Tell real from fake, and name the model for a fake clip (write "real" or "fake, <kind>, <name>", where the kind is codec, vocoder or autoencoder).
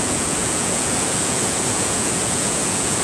fake, vocoder, Vocos